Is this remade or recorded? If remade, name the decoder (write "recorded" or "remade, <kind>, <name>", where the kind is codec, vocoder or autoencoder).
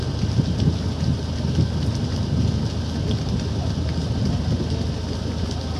recorded